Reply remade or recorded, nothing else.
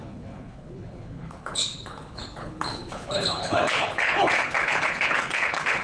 remade